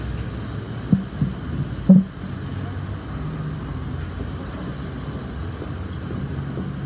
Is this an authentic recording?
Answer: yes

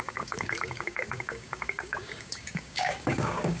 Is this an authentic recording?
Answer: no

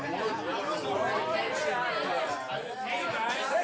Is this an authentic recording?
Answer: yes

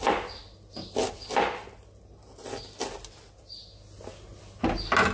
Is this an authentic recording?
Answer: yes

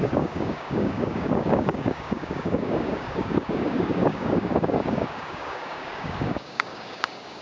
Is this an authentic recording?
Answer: no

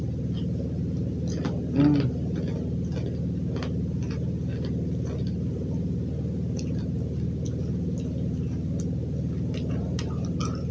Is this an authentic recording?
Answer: yes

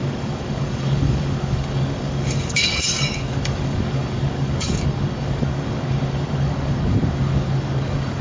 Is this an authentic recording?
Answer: no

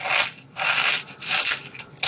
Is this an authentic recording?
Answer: yes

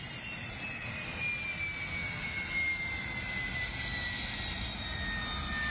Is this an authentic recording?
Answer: yes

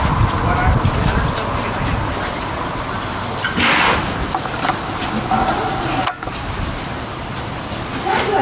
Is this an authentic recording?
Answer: yes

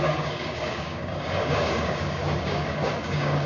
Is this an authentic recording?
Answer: no